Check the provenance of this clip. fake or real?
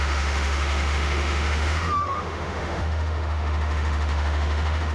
fake